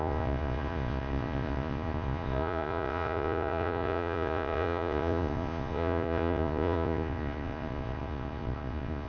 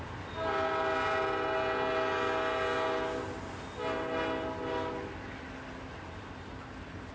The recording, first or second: second